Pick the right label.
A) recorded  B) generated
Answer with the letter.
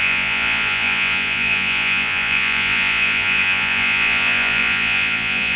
B